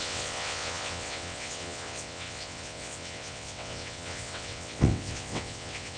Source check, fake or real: fake